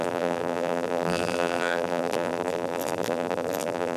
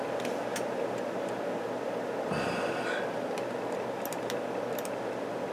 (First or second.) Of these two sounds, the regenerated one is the first